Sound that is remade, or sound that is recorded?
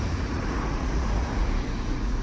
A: remade